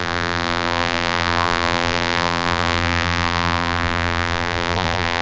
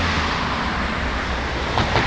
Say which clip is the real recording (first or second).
second